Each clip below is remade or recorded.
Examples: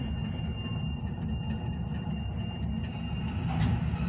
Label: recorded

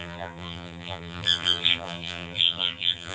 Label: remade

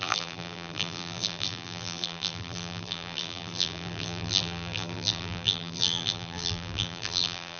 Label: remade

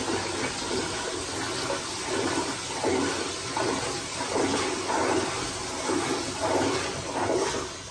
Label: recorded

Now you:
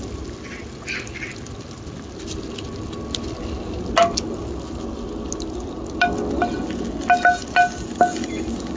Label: recorded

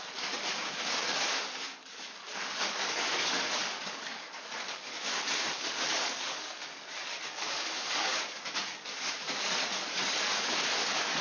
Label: remade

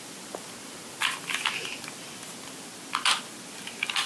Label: recorded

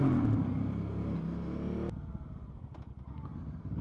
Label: recorded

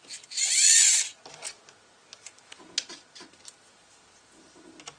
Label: recorded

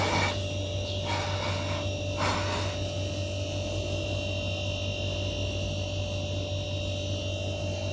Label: recorded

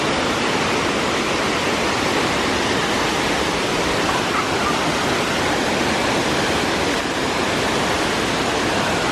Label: recorded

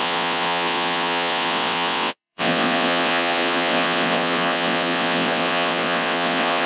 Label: remade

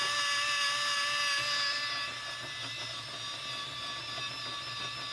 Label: recorded